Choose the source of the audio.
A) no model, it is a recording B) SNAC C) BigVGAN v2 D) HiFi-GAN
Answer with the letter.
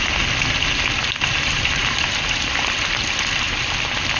A